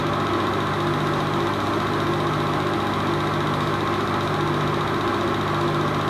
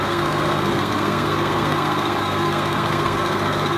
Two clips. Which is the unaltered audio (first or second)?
first